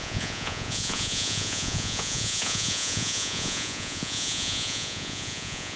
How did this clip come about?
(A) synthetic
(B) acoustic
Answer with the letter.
A